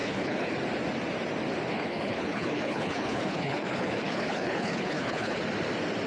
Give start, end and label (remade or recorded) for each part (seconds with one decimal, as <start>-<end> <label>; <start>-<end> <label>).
0.0-0.5 remade; 0.5-1.7 recorded; 1.7-5.4 remade; 5.4-6.1 recorded